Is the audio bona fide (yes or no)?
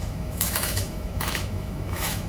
no